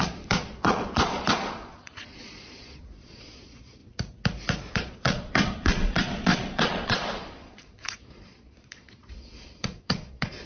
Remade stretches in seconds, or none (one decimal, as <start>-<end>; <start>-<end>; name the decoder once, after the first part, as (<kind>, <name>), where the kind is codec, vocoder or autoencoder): 0.0-3.8 (vocoder, Vocos); 4.7-10.5